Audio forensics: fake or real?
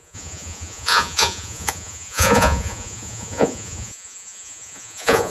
fake